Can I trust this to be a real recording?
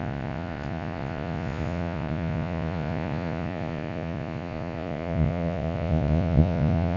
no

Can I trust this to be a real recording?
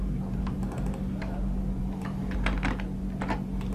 yes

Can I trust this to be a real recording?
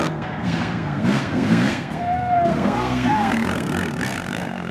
no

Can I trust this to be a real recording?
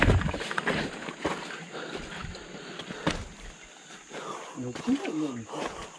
yes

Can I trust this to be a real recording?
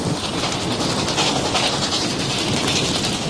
yes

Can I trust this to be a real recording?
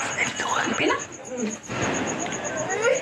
yes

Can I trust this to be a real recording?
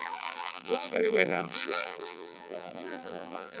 no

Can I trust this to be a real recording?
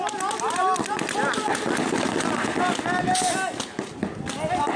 yes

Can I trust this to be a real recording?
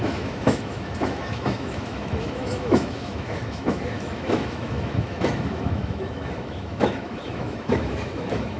no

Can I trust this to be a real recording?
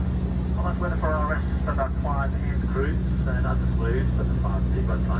yes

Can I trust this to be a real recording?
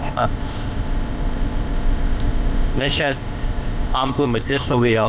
no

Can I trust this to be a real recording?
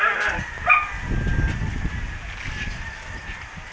yes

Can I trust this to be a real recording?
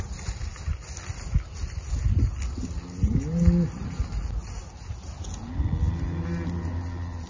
yes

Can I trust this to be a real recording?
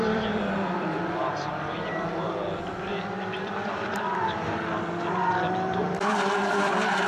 no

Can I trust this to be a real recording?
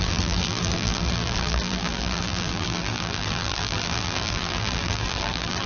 no